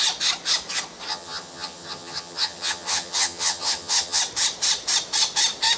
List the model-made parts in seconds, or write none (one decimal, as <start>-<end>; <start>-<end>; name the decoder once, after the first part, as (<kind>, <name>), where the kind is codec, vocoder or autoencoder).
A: 1.1-4.2 (vocoder, HiFi-GAN)